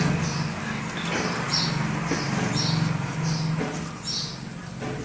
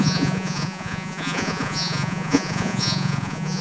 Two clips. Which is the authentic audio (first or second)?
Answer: first